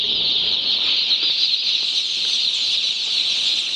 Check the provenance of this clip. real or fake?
real